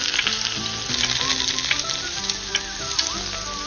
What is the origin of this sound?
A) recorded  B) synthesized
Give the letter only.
A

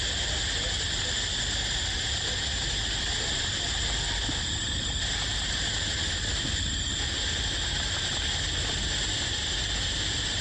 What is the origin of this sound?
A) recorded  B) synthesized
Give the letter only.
A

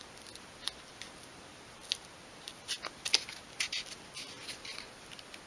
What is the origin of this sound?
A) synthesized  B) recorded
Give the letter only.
B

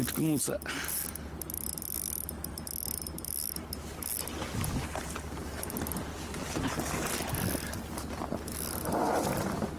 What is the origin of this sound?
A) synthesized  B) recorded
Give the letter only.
B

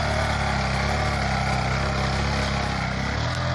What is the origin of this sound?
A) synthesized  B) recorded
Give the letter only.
B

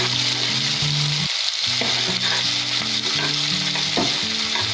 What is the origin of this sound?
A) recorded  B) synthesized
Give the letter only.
A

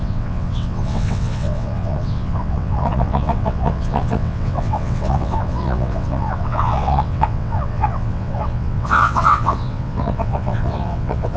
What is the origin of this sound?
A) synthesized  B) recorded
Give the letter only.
A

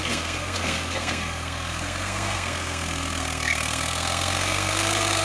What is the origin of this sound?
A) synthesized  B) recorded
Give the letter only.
A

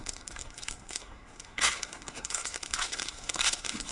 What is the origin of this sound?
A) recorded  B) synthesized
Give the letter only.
B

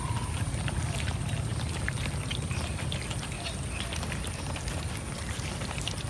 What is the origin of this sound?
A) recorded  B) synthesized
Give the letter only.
A